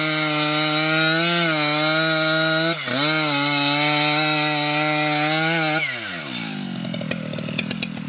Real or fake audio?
real